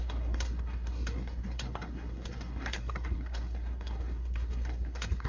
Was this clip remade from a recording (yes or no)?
yes